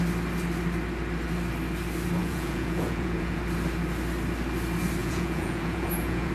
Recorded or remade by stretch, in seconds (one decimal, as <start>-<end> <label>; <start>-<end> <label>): 0.0-2.2 recorded; 2.2-3.4 remade; 3.4-5.0 recorded; 5.0-6.3 remade